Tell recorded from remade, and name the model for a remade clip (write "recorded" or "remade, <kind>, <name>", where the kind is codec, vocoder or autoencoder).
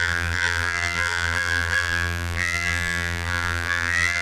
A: remade, vocoder, BigVGAN v2